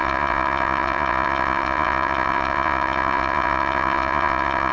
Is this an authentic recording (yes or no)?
no